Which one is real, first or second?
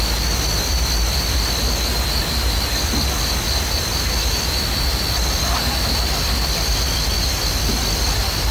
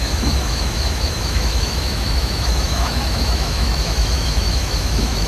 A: first